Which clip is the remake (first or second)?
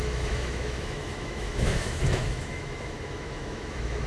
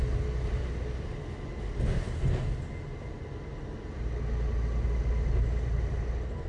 first